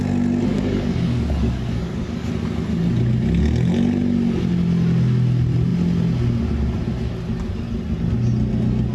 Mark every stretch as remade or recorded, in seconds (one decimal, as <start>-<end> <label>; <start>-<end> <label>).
0.0-0.5 recorded; 0.5-2.3 remade; 2.3-8.9 recorded